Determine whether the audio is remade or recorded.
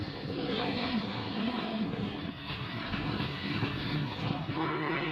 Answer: remade